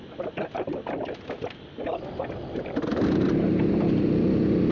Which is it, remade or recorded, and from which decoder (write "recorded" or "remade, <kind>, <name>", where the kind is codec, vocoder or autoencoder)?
recorded